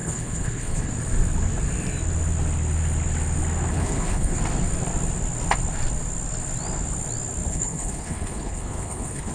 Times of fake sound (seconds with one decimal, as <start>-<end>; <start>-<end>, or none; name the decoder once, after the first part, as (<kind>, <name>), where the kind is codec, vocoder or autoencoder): 0.0-0.9 (codec, HILCodec); 3.7-4.4; 7.5-9.3